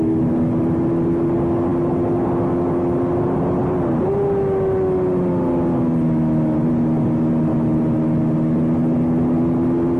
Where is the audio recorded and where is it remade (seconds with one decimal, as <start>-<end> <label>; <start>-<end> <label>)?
0.0-10.0 recorded